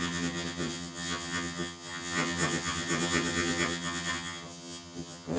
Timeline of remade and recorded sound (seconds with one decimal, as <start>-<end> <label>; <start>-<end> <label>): 0.0-5.4 remade